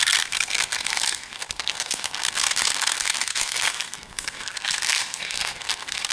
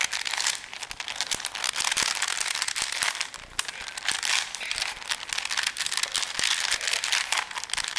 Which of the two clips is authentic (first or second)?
second